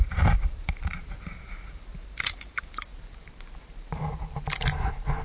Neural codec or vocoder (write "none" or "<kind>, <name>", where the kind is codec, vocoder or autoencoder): vocoder, BigVGAN v2